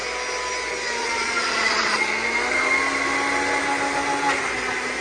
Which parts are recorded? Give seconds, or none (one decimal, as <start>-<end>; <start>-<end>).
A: 0.0-1.0; 2.1-5.0